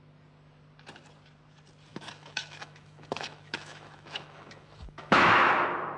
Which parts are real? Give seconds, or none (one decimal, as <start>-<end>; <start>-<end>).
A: 0.0-1.9; 5.5-6.0